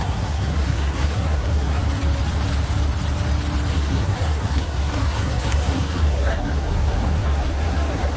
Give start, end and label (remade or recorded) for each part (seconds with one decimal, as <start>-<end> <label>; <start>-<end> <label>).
0.0-1.8 remade; 1.8-3.7 recorded; 3.7-8.2 remade